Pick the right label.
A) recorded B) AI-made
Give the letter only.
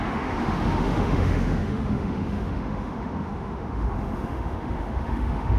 B